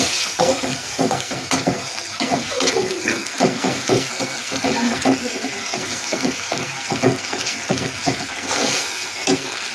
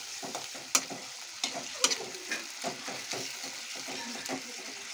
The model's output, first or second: first